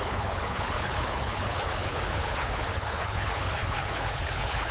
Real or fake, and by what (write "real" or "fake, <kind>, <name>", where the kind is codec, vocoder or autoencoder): fake, codec, HILCodec